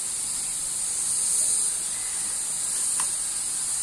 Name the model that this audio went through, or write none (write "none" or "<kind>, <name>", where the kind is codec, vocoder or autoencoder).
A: none